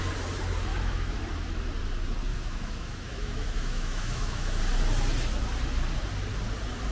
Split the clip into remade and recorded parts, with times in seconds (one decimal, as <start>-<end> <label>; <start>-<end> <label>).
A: 0.0-0.7 recorded; 0.7-1.2 remade; 1.2-2.3 recorded; 2.3-4.6 remade; 4.6-6.9 recorded